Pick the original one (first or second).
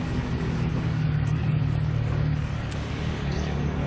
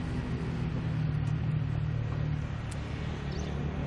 second